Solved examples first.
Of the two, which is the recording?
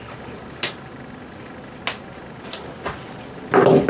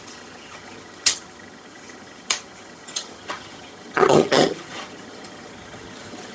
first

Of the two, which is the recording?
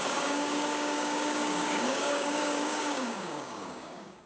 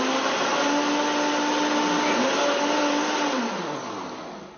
second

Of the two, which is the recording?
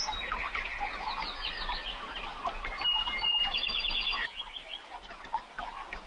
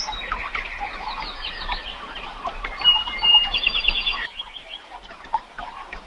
first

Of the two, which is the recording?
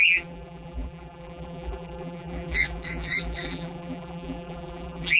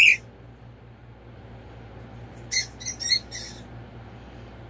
second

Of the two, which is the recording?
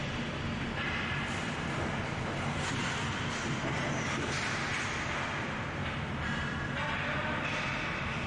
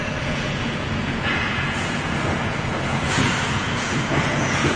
first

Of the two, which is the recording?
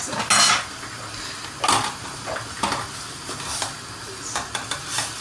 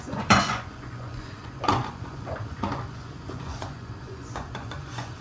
first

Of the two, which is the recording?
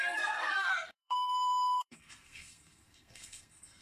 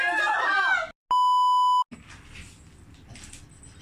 second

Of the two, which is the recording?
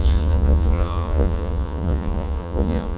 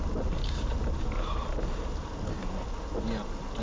second